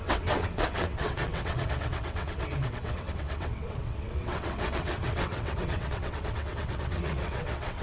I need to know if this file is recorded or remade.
remade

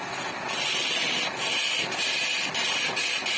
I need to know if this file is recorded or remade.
recorded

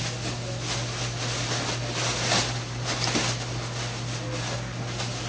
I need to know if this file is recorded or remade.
recorded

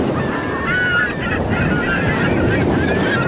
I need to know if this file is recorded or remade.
recorded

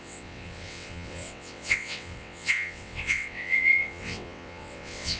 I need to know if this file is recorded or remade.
remade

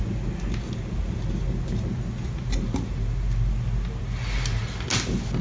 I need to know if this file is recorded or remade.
recorded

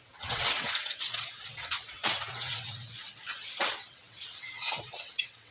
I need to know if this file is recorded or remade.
remade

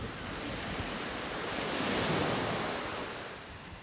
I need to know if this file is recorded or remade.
recorded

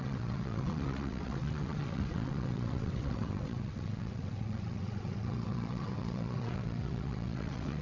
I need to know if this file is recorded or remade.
remade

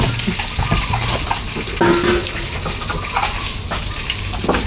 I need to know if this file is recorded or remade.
recorded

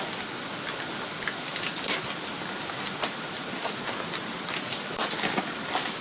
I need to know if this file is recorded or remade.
recorded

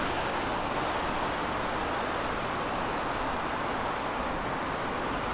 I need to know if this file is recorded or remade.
recorded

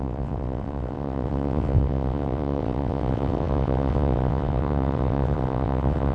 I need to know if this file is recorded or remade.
remade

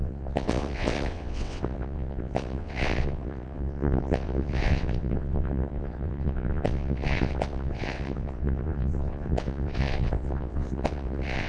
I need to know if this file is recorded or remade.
remade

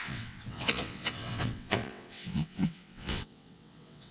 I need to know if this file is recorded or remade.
remade